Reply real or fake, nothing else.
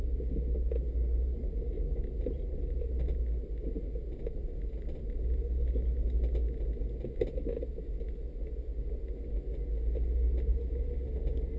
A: real